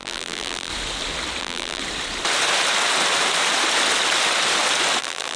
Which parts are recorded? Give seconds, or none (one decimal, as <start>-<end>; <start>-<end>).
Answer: 0.7-1.4; 1.8-5.0